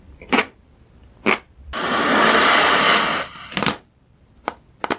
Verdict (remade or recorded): remade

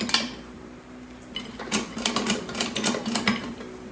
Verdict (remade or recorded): recorded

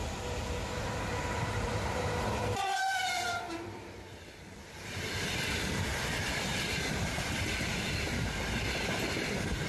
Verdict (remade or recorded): remade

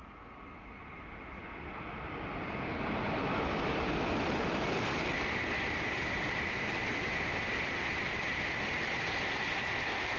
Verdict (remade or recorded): recorded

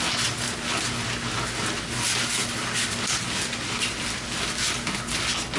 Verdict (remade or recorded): recorded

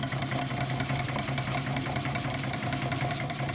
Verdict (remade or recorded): remade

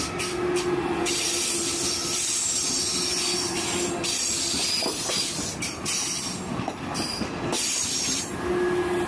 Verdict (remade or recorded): recorded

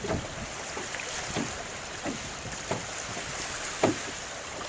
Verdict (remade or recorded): recorded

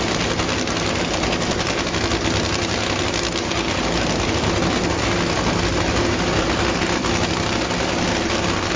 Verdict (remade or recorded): recorded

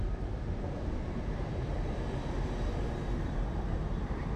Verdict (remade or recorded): remade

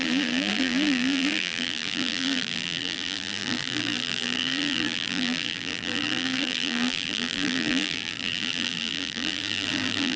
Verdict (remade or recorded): remade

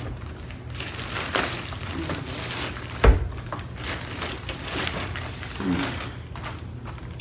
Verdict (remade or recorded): recorded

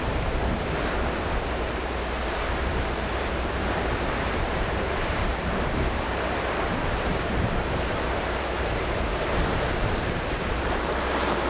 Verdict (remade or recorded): remade